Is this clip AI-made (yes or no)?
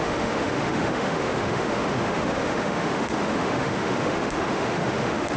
yes